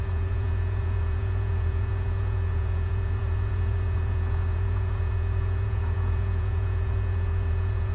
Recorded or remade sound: remade